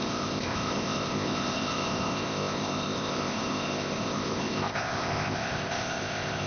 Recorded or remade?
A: remade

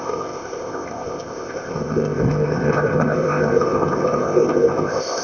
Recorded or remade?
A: remade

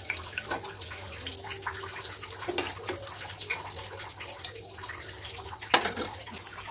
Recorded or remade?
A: recorded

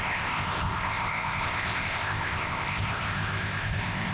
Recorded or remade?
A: remade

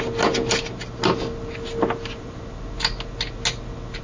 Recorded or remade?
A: recorded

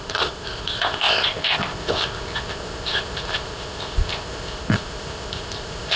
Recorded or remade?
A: remade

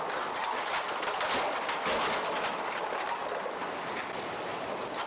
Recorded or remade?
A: recorded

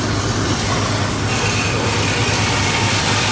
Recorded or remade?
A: recorded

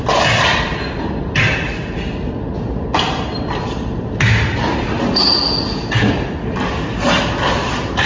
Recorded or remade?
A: recorded